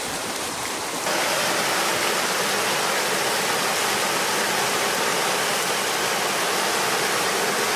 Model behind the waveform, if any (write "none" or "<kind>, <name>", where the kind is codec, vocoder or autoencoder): none